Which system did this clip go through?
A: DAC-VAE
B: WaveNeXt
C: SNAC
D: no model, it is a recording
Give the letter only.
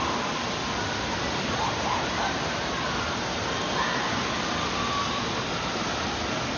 D